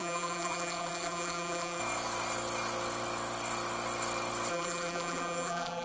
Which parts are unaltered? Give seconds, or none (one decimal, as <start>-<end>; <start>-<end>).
1.8-4.5